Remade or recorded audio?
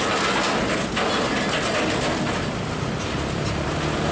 recorded